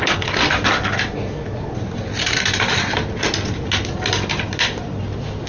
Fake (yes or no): no